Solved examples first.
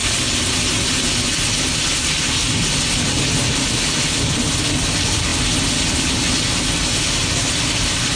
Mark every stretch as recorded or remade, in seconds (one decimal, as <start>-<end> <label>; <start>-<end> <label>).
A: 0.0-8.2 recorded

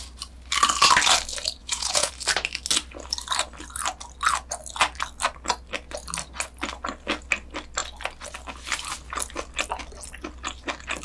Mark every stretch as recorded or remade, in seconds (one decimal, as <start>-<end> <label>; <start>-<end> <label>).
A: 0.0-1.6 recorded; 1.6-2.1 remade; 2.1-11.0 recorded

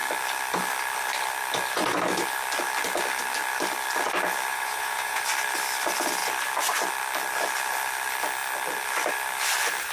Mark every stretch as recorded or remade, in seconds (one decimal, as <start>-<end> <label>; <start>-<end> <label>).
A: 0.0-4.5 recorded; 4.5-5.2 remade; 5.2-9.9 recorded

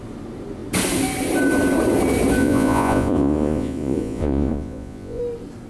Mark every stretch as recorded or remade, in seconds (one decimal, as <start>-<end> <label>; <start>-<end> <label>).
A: 0.0-2.4 recorded; 2.4-5.2 remade; 5.2-5.7 recorded

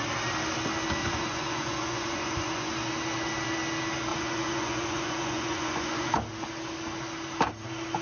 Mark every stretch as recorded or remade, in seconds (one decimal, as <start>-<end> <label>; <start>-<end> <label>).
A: 0.0-1.0 recorded; 1.0-2.7 remade; 2.7-4.1 recorded; 4.1-6.1 remade; 6.1-8.0 recorded

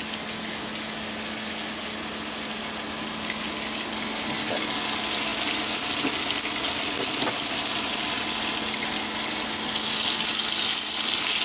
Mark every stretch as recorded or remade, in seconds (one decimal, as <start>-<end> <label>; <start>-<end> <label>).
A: 0.0-11.4 recorded